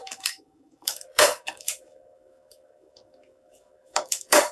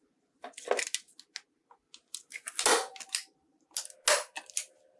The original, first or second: second